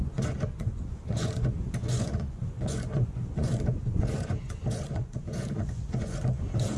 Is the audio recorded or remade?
remade